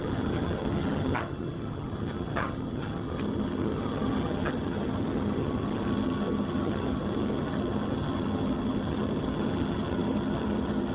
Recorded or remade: remade